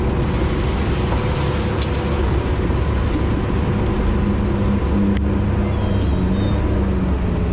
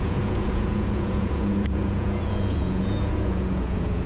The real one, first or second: first